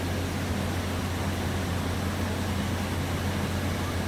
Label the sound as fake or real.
real